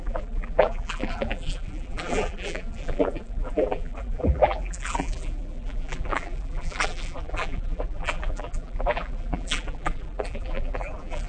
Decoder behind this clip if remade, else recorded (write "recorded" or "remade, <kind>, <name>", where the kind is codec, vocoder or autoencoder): remade, vocoder, BigVGAN v2